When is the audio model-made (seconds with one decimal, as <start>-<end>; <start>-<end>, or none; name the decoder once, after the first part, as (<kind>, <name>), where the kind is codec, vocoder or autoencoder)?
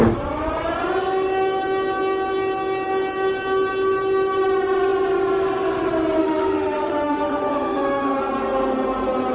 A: 6.2-8.2 (autoencoder, DAC-VAE)